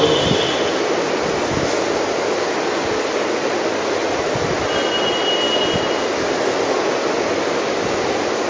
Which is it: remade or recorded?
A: recorded